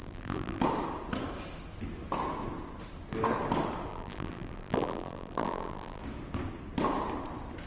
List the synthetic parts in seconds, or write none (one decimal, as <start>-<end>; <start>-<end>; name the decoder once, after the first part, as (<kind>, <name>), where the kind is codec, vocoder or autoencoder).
0.0-0.6 (vocoder, BigVGAN v2); 3.9-6.0